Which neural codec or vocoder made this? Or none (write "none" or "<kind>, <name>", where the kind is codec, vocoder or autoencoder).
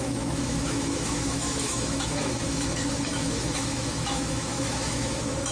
autoencoder, DAC-VAE